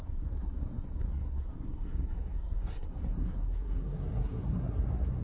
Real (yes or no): no